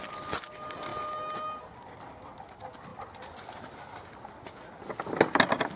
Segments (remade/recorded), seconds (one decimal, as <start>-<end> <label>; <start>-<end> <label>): 0.0-5.8 recorded